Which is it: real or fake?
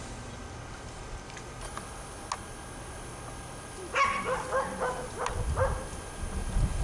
real